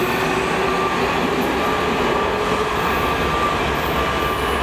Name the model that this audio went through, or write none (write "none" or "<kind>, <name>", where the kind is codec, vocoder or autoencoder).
none